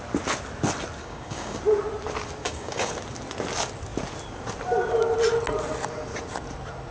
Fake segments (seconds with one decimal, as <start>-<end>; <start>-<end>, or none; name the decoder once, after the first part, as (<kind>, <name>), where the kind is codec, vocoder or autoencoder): 1.0-1.6 (codec, DAC); 2.4-2.9